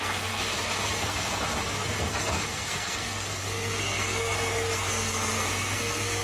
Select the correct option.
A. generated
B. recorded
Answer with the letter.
A